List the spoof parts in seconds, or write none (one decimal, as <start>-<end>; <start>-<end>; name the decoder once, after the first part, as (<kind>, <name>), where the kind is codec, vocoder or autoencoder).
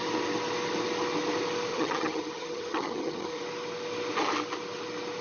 1.7-3.4 (vocoder, HiFi-GAN)